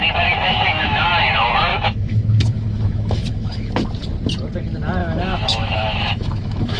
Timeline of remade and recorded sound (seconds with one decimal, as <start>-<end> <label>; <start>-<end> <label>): 0.0-0.5 recorded; 0.5-1.1 remade; 1.1-1.7 recorded; 1.7-3.7 remade; 3.7-5.0 recorded; 5.0-6.8 remade